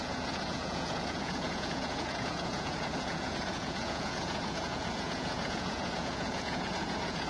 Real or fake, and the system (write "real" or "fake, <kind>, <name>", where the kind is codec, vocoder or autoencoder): fake, vocoder, Vocos